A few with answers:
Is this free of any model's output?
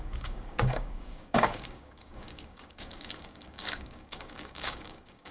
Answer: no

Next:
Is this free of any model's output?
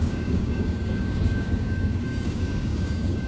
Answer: no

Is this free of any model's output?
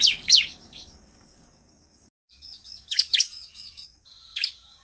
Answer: no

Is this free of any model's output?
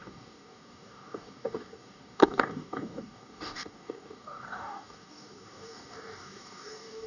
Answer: no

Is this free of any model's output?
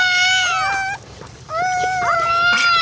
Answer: yes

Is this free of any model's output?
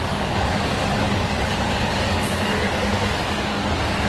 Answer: no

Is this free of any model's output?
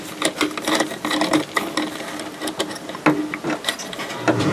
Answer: yes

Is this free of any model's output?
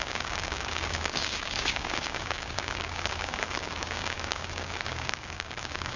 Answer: no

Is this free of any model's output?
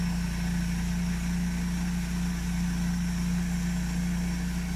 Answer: yes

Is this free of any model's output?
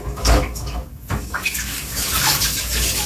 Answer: no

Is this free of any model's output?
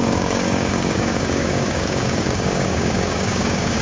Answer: no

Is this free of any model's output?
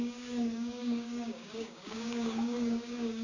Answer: no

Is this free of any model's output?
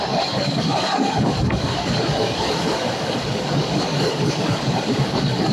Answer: no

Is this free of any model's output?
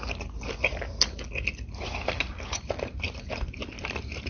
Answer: yes